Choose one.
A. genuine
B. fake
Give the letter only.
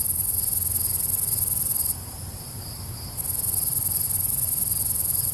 A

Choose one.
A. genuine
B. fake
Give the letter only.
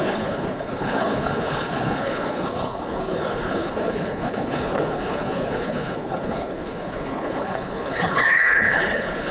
B